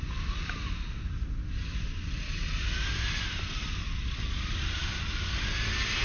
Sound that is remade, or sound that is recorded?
recorded